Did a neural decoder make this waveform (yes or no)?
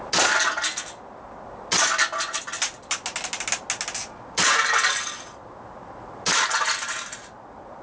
no